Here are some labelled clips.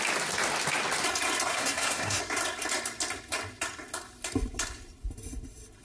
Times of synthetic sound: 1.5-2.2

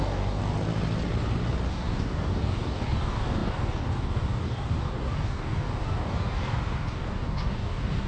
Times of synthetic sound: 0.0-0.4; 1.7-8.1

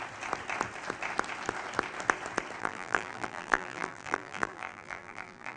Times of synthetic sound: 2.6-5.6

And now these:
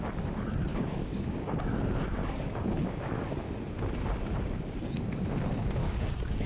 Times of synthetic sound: 0.7-1.5; 2.2-3.1; 5.8-6.5

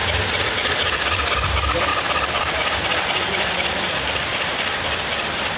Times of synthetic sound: 0.0-0.8; 1.9-5.6

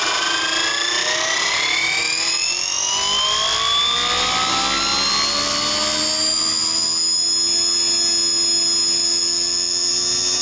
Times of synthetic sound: none

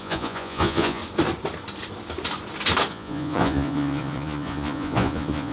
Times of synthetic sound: 0.0-1.0; 2.9-5.5